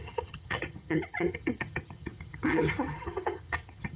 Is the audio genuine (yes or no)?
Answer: no